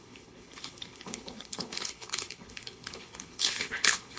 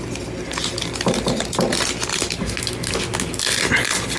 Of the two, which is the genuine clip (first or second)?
second